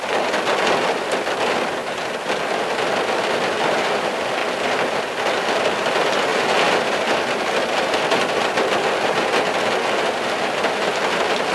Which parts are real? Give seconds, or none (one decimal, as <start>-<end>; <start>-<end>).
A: 0.0-11.5